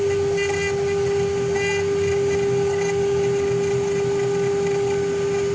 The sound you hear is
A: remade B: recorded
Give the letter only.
B